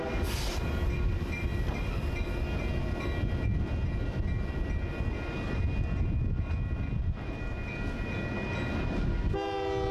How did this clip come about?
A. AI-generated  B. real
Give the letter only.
B